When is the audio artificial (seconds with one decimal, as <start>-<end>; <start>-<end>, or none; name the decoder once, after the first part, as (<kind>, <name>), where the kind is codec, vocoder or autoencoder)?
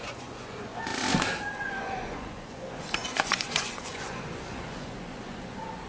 0.0-0.9 (vocoder, Vocos); 1.6-5.9